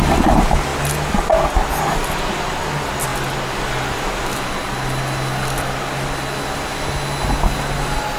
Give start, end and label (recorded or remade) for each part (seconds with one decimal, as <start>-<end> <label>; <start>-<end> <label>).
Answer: 0.0-8.2 recorded